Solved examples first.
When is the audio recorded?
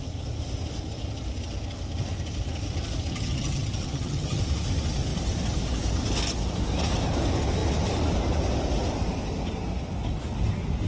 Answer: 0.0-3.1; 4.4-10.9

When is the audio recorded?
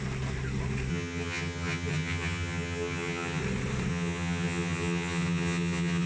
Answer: 0.0-0.9; 3.4-3.9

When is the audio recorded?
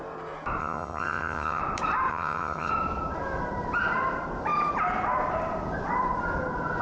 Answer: 0.0-0.6; 1.6-2.1; 2.7-6.8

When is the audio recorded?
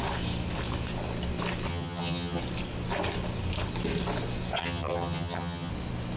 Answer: 0.0-1.7; 2.4-4.6; 5.7-6.2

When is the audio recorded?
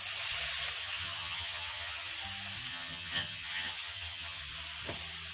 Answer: 0.0-0.8; 2.1-2.7; 4.4-5.3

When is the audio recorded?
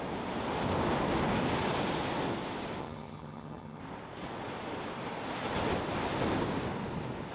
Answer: 0.0-2.8; 3.8-7.3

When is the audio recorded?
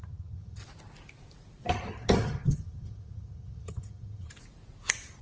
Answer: 0.6-1.7; 4.3-5.2